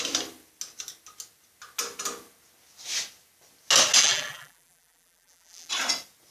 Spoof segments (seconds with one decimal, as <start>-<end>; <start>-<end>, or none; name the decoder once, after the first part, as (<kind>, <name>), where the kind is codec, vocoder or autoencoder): 4.0-5.7 (vocoder, BigVGAN v2)